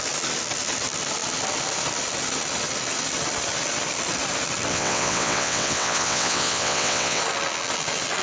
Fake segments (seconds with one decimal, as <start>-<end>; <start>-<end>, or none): 4.7-7.2